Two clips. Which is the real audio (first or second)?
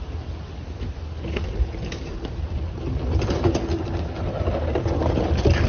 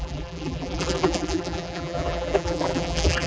first